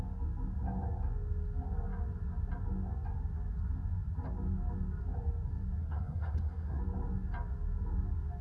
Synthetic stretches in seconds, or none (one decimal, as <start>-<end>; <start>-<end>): 5.8-6.8